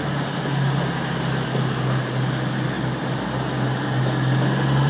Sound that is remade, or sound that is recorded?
recorded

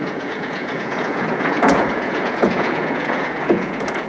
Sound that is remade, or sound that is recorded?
remade